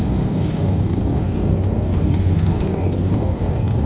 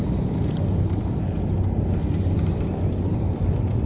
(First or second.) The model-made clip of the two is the first